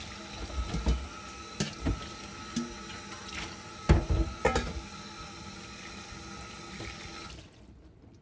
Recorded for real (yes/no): yes